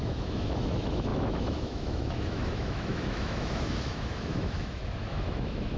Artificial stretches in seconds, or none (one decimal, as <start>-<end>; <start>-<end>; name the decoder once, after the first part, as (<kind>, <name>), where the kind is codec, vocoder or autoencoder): 0.0-5.8 (autoencoder, DAC-VAE)